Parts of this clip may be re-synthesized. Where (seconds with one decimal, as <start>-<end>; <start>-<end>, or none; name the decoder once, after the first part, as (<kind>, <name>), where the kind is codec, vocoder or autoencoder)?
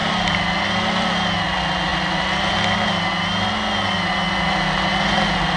0.0-1.1 (vocoder, BigVGAN v2); 1.9-2.5